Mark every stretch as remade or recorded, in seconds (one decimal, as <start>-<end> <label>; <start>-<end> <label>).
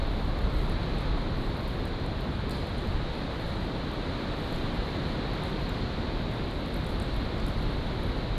0.0-2.9 remade; 2.9-4.6 recorded; 4.6-6.9 remade; 6.9-8.4 recorded